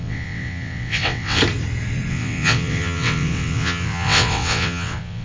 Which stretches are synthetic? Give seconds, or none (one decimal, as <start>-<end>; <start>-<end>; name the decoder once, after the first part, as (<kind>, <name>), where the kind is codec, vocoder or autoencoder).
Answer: 0.0-1.4 (vocoder, WaveNeXt); 2.1-5.2